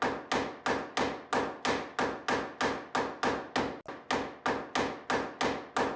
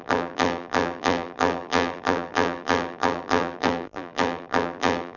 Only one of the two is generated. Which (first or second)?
second